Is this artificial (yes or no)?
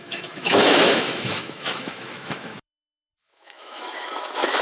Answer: yes